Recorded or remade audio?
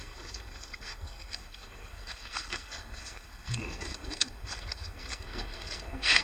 remade